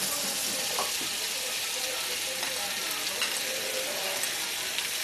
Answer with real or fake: real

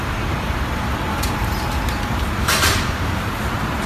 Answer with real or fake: fake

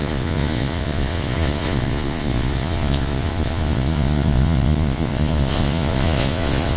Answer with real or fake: fake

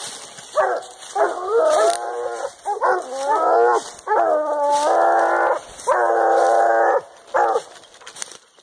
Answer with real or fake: real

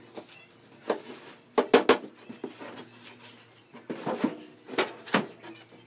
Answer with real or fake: real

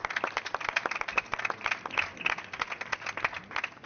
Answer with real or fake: real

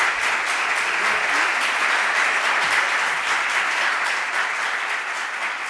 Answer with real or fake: real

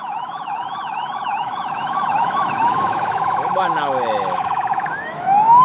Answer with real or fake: fake